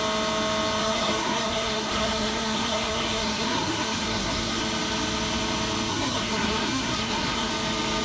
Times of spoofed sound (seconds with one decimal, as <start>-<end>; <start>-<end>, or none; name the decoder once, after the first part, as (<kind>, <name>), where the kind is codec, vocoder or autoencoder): 0.8-4.6 (codec, SNAC); 5.9-7.5